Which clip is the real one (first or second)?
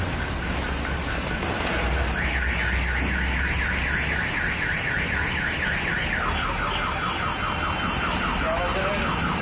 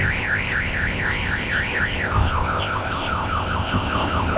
first